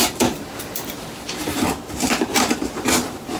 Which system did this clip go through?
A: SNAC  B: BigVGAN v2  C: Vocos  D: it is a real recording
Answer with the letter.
B